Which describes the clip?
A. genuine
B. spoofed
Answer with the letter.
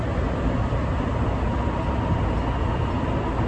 A